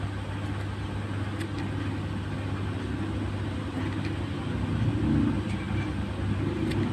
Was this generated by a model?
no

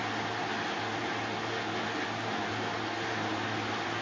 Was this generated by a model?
no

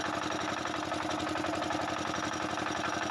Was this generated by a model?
no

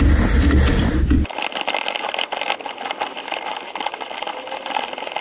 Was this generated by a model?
no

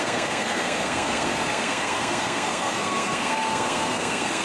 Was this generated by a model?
yes